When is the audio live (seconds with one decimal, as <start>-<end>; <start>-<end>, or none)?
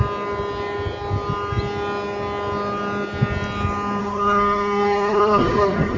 0.0-4.0